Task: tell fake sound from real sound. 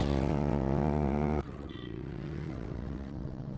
fake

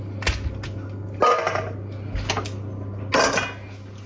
real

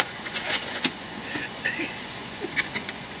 fake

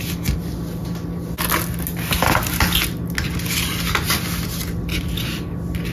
real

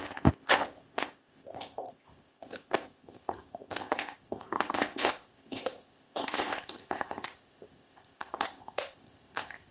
fake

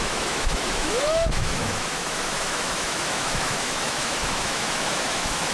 fake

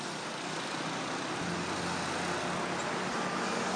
real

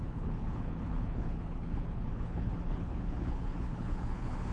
fake